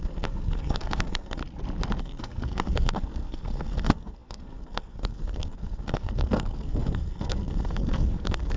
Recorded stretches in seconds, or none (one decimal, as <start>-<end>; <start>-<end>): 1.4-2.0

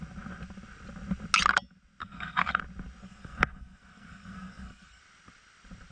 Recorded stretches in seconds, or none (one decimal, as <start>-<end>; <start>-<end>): 0.0-2.0; 2.6-3.0; 5.0-5.9

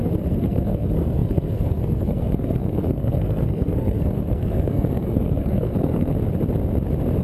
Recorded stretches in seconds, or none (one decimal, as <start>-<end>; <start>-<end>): 6.1-7.2